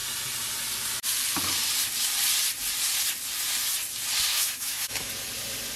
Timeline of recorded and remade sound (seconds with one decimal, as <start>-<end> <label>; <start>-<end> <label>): 0.0-4.3 recorded; 4.3-5.1 remade; 5.1-5.8 recorded